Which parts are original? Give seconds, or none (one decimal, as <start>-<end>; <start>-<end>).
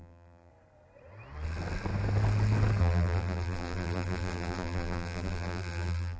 0.5-2.8